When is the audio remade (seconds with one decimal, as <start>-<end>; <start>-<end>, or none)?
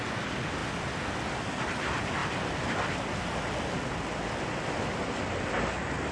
none